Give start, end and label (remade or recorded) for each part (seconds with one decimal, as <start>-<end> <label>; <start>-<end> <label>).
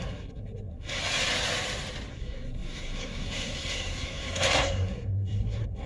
0.0-1.0 remade; 1.0-2.1 recorded; 2.1-5.9 remade